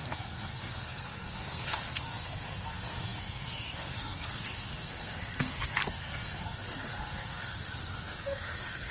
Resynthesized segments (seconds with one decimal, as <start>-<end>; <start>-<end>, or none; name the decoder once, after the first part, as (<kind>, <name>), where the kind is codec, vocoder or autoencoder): 0.0-8.9 (codec, SNAC)